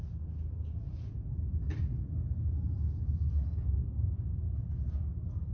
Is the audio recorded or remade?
recorded